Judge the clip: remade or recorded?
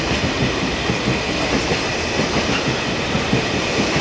recorded